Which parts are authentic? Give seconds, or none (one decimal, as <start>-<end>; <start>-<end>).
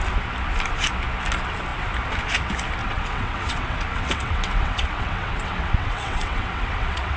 0.0-2.8